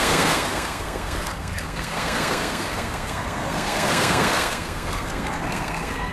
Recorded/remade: remade